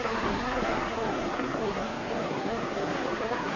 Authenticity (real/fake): fake